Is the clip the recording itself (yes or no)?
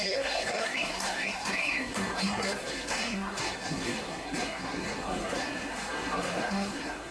no